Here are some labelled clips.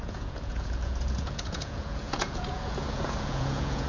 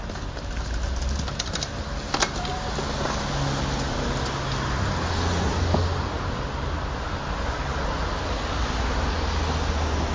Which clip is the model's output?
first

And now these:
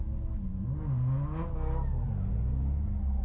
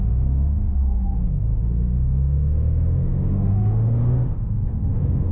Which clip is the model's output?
second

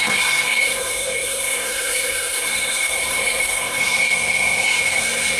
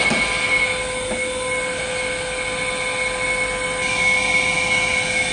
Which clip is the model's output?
first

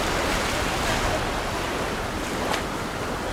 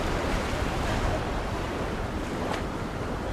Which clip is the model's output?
second